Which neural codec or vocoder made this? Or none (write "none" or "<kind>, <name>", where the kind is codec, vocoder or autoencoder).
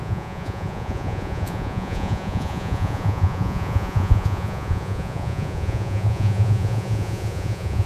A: vocoder, Vocos